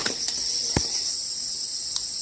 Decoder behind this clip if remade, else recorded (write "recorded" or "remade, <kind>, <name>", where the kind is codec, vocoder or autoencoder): recorded